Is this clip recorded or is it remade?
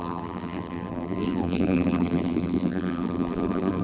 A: remade